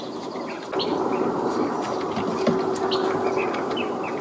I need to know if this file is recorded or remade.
recorded